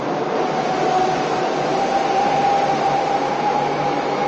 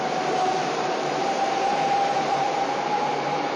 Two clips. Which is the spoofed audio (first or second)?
second